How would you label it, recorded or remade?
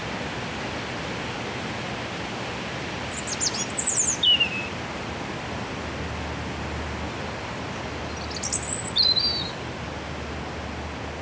recorded